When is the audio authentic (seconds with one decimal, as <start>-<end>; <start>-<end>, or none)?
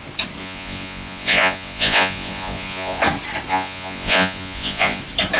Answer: 0.0-0.4; 3.0-3.5; 5.0-5.4